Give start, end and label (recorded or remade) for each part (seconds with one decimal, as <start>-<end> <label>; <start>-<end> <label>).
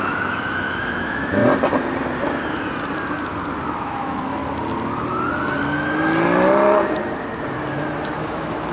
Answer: 0.0-1.4 remade; 1.4-3.8 recorded; 3.8-4.4 remade; 4.4-8.1 recorded; 8.1-8.7 remade